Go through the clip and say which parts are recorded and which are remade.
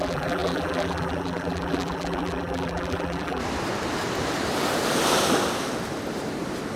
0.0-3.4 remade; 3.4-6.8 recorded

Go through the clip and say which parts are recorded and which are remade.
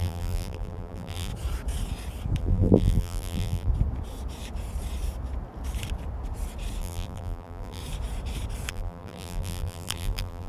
0.0-1.3 remade; 1.3-2.4 recorded; 2.4-3.7 remade; 3.7-6.8 recorded; 6.8-7.8 remade; 7.8-8.7 recorded; 8.7-10.5 remade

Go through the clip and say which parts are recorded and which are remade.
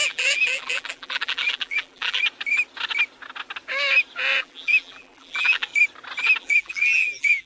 0.0-2.2 remade; 2.2-4.4 recorded; 4.4-5.7 remade; 5.7-6.4 recorded; 6.4-7.5 remade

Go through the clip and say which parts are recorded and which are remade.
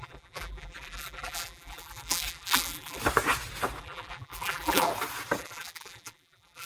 0.0-3.0 remade; 3.0-3.8 recorded; 3.8-4.9 remade; 4.9-5.4 recorded; 5.4-6.7 remade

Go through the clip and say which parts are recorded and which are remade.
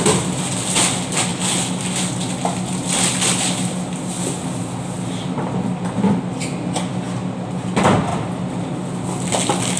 0.0-8.1 recorded; 8.1-8.7 remade; 8.7-9.8 recorded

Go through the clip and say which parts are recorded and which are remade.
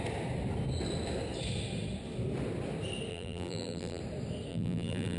0.0-3.1 recorded; 3.1-4.0 remade; 4.0-4.5 recorded; 4.5-5.2 remade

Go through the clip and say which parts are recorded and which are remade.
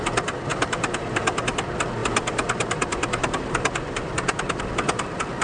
0.0-0.5 recorded; 0.5-1.4 remade; 1.4-2.0 recorded; 2.0-4.6 remade; 4.6-5.4 recorded